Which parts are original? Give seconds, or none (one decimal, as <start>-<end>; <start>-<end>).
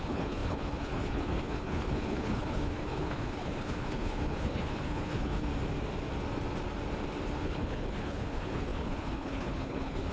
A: 5.5-7.4